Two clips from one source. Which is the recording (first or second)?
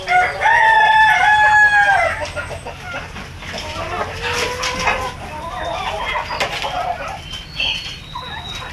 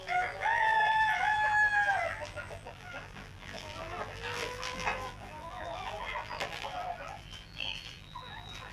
first